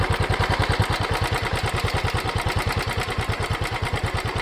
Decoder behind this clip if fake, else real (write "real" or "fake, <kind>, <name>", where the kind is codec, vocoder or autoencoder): real